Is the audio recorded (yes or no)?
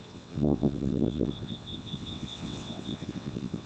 no